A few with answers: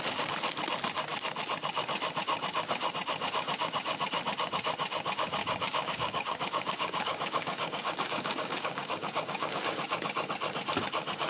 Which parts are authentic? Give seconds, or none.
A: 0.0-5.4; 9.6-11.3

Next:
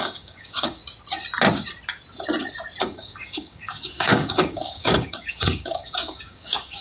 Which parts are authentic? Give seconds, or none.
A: 0.8-2.8

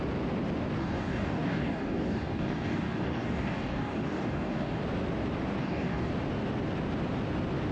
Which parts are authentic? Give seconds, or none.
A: 0.0-0.8; 4.8-5.6; 6.1-7.7